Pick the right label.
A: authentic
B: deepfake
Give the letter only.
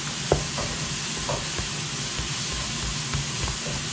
A